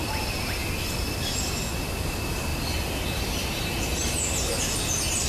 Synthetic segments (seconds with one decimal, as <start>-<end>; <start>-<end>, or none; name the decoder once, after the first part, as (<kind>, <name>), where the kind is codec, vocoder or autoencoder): none